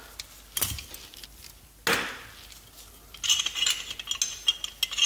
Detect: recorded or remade recorded